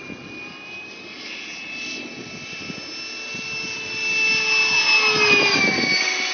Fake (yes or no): no